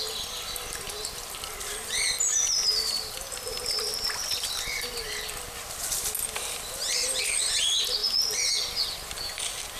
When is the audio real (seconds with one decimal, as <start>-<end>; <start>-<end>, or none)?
0.0-9.8